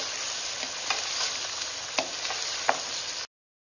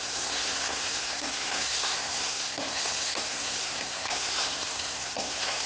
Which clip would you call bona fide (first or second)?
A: first